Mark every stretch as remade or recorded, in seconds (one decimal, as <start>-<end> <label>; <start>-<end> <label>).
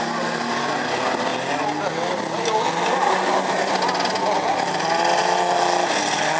0.0-6.4 recorded